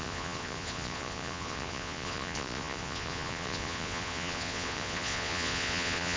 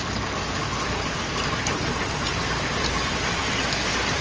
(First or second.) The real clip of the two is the second